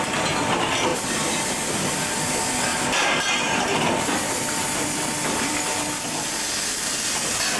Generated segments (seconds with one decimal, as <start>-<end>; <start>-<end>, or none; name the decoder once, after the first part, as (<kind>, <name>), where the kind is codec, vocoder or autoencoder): none